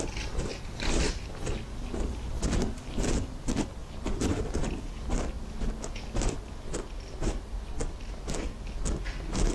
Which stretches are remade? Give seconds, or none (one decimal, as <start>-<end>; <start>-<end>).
none